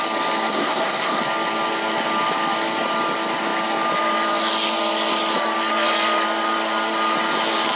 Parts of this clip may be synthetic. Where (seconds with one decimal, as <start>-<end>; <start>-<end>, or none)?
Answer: 0.5-1.2